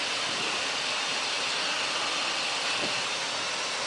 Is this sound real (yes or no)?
yes